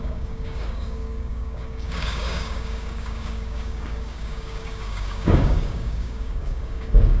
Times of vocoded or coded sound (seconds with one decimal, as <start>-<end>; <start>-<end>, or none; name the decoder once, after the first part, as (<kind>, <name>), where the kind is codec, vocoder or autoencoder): 0.0-7.2 (codec, DAC)